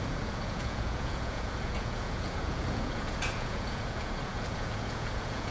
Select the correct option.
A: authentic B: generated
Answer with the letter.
B